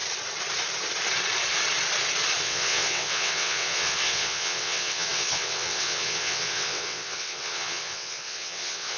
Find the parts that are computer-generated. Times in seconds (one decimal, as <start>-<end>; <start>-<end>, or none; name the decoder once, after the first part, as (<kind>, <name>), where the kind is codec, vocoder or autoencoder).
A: 2.4-9.0 (vocoder, WaveNeXt)